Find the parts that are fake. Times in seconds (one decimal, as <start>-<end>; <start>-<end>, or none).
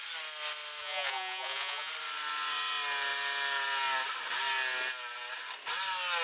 0.8-1.9